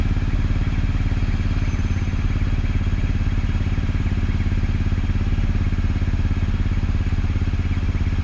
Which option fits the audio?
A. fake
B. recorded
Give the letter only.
B